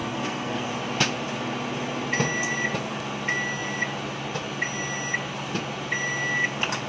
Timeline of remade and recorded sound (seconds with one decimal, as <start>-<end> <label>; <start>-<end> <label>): 0.0-0.7 remade; 0.7-6.9 recorded